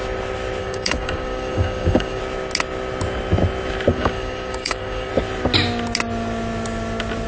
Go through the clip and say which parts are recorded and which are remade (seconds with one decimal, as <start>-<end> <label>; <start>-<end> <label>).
0.0-0.6 recorded; 0.6-2.2 remade; 2.2-3.9 recorded; 3.9-5.1 remade; 5.1-7.3 recorded

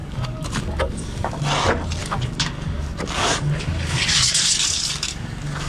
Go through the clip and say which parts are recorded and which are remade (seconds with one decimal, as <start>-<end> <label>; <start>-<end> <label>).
0.0-1.4 remade; 1.4-2.0 recorded; 2.0-5.7 remade

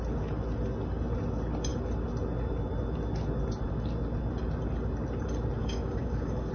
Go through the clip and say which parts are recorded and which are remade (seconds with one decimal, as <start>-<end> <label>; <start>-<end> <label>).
0.0-5.6 recorded; 5.6-6.5 remade

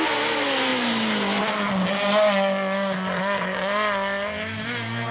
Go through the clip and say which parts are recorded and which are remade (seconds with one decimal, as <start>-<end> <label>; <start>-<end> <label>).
0.0-5.1 recorded

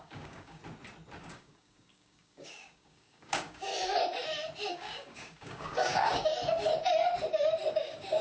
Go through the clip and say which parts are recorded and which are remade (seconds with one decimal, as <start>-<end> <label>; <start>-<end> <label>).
0.0-0.6 remade; 0.6-1.2 recorded; 1.2-3.7 remade; 3.7-4.7 recorded; 4.7-6.3 remade; 6.3-7.7 recorded; 7.7-8.2 remade

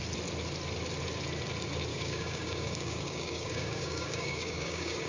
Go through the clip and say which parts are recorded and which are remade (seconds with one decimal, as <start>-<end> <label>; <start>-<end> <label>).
0.0-1.9 recorded; 1.9-5.1 remade

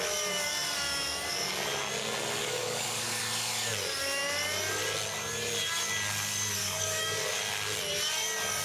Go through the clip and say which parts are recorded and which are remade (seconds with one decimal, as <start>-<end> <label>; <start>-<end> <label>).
0.0-2.4 recorded; 2.4-3.2 remade; 3.2-6.6 recorded; 6.6-7.3 remade; 7.3-8.6 recorded